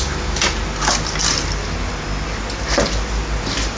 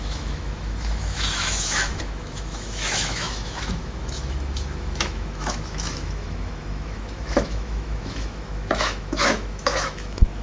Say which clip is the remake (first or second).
second